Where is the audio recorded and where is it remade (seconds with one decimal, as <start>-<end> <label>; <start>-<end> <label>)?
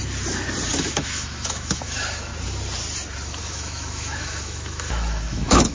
0.0-0.8 recorded; 0.8-2.3 remade; 2.3-3.4 recorded; 3.4-5.7 remade